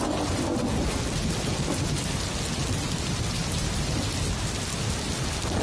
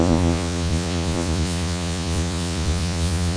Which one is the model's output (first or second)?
second